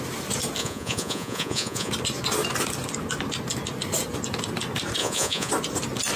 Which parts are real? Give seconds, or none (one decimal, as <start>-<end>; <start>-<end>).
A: 0.0-0.6; 1.9-5.0; 5.5-6.2